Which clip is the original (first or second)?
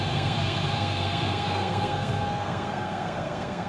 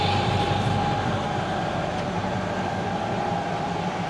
second